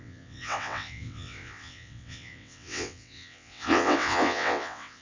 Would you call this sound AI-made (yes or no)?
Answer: yes